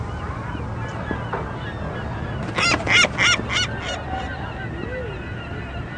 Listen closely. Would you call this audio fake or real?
real